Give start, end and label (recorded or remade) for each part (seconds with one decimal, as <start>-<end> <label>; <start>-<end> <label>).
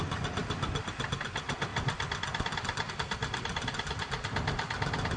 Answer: 0.0-0.4 recorded; 0.4-0.9 remade; 0.9-1.7 recorded; 1.7-2.9 remade; 2.9-5.2 recorded